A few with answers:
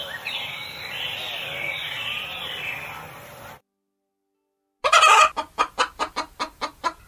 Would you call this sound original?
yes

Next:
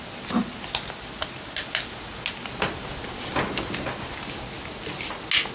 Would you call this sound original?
yes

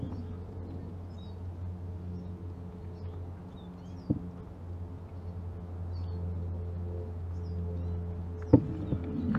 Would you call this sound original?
yes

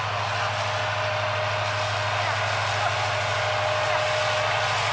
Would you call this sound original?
yes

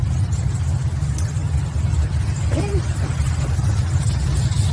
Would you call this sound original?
yes